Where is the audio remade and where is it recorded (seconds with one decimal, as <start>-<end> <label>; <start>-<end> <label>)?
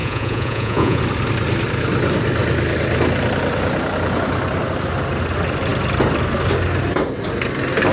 0.0-1.0 remade; 1.0-7.9 recorded